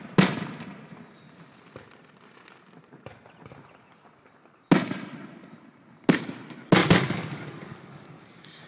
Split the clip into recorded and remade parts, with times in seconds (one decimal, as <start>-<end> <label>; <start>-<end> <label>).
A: 0.0-6.8 recorded; 6.8-8.7 remade